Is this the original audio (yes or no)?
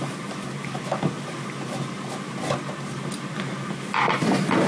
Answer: yes